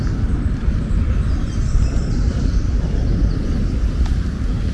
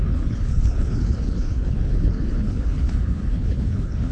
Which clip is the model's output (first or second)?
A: second